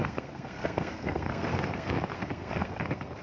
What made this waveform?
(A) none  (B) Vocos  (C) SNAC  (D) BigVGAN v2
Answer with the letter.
C